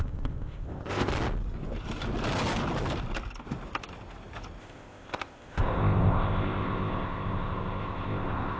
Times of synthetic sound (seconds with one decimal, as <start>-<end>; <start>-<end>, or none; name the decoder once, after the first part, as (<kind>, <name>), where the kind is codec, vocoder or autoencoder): 0.0-1.1 (codec, ZipCodec); 4.6-8.6